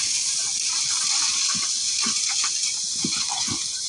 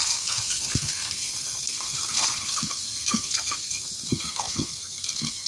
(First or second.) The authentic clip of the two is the first